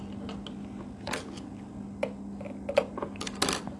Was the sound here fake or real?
real